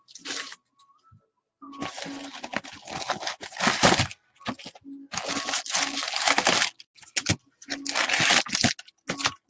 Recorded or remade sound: recorded